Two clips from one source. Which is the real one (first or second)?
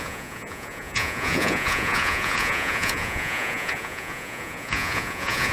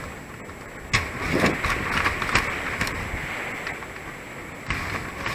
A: second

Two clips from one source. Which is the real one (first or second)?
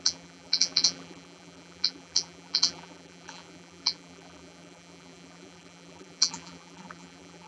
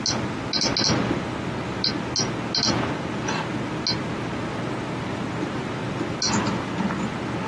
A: second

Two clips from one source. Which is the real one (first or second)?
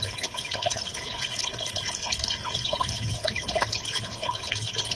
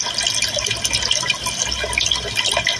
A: second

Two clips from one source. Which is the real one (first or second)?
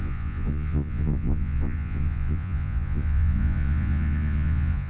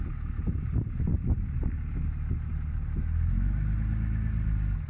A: second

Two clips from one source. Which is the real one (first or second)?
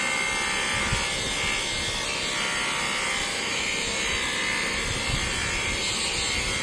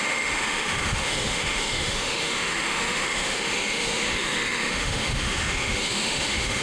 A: first